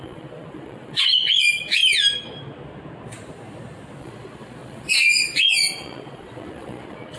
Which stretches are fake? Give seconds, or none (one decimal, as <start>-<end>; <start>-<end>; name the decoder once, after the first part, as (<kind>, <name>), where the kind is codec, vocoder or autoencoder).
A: 0.0-1.8 (vocoder, Vocos); 4.0-7.2